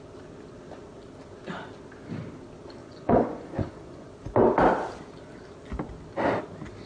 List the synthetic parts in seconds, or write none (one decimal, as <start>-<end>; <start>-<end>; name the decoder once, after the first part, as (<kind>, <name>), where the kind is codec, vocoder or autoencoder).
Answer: 2.8-4.1 (vocoder, Vocos)